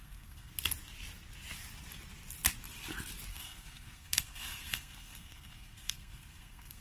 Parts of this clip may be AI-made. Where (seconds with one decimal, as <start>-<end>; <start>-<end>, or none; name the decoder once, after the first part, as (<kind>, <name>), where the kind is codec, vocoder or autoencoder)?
0.0-0.5 (codec, SNAC); 3.3-6.8